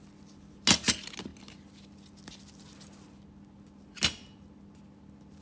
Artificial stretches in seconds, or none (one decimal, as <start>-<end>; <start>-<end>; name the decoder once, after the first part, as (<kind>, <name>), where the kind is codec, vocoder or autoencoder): none